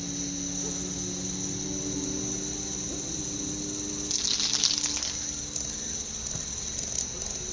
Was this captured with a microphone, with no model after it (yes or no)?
yes